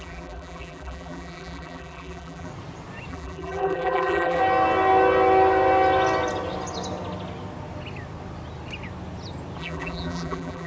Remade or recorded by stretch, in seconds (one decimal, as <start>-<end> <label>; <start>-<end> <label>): 0.0-2.5 remade; 2.5-3.1 recorded; 3.1-4.4 remade; 4.4-9.6 recorded; 9.6-10.7 remade